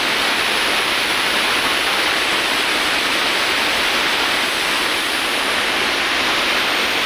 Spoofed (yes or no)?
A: no